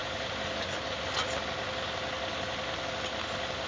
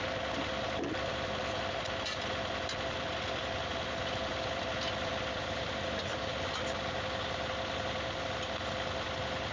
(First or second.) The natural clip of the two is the first